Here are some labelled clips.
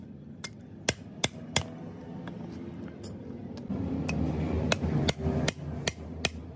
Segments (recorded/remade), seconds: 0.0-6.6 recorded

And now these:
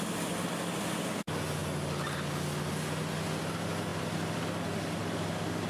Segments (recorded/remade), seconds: 0.0-3.9 recorded; 3.9-4.4 remade; 4.4-5.7 recorded

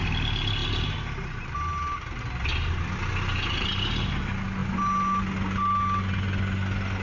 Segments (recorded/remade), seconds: 0.0-7.0 recorded

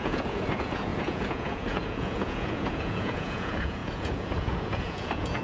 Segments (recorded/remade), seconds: 0.0-5.4 remade